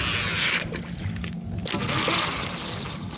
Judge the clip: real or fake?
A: real